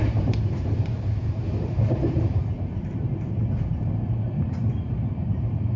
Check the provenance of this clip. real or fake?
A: fake